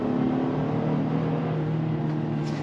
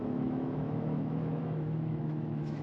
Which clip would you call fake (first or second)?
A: second